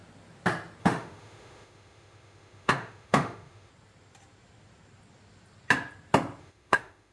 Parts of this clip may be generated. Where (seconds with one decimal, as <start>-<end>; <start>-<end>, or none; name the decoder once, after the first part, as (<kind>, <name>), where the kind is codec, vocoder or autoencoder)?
0.8-3.7 (autoencoder, DAC-VAE); 6.4-7.1